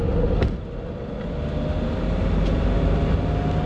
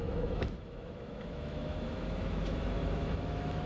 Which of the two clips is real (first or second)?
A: first